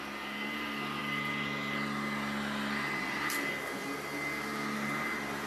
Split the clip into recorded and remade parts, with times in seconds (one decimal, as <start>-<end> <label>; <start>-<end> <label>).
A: 0.0-5.5 recorded